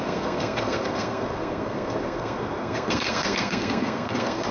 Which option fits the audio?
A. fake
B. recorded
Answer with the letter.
A